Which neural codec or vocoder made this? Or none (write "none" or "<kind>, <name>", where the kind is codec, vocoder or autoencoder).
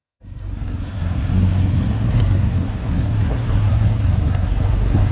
codec, SNAC